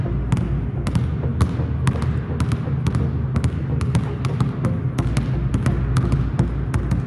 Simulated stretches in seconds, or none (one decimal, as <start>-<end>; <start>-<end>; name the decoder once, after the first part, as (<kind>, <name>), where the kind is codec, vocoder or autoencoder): none